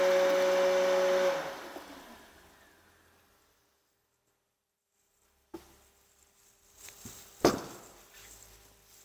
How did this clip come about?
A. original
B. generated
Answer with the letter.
A